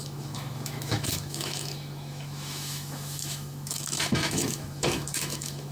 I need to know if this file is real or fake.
fake